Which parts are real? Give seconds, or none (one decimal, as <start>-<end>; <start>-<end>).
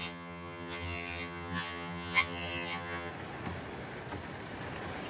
3.1-5.1